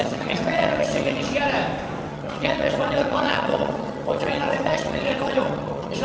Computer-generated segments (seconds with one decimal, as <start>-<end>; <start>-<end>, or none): 0.0-1.3; 2.1-6.0